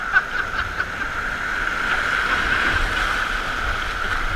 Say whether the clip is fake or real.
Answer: real